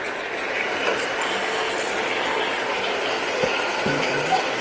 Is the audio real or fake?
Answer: real